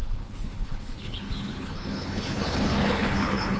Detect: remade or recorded remade